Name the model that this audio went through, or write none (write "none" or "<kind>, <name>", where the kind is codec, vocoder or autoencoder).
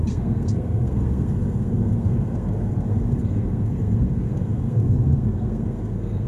codec, SNAC